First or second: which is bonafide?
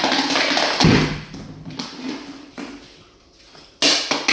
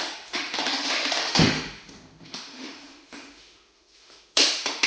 first